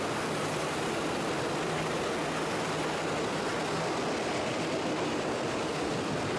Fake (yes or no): no